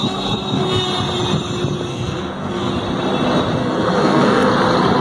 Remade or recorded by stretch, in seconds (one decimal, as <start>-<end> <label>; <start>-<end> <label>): 0.0-0.8 remade; 0.8-1.9 recorded; 1.9-2.7 remade; 2.7-3.6 recorded; 3.6-4.5 remade; 4.5-5.0 recorded